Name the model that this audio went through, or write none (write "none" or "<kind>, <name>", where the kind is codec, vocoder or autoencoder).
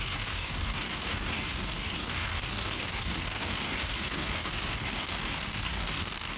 codec, DAC